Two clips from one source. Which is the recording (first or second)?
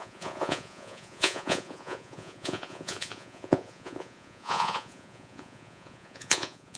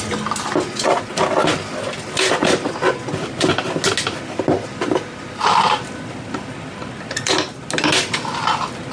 second